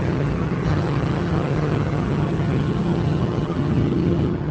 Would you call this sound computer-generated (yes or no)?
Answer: yes